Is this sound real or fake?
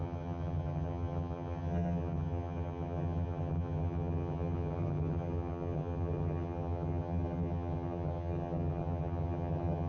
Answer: fake